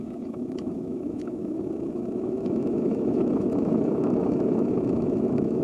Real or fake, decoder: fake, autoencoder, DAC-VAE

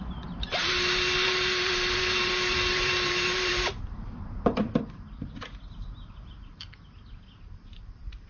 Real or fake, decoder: fake, vocoder, BigVGAN v2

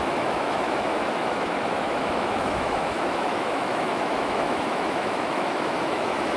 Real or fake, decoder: fake, autoencoder, DAC-VAE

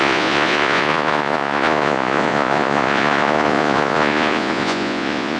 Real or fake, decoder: fake, vocoder, Vocos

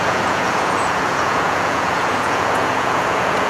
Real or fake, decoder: fake, vocoder, Vocos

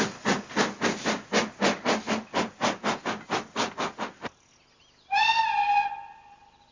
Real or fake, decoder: real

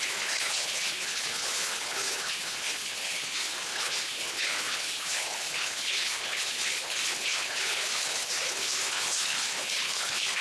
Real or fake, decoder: fake, codec, HILCodec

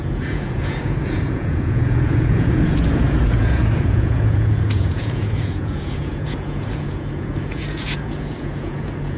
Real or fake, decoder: fake, vocoder, Vocos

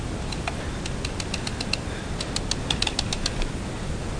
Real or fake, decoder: real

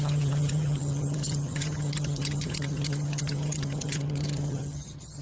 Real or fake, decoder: fake, vocoder, HiFi-GAN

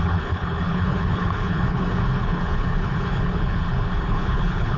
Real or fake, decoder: fake, codec, HILCodec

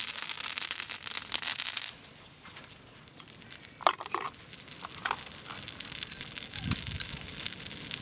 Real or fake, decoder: real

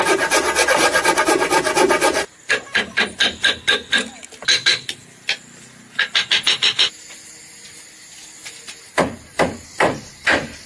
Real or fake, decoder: real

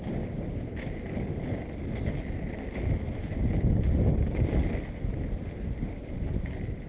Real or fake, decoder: real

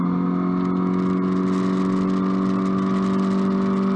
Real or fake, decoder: real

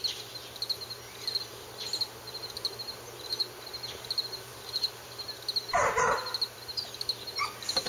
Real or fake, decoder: real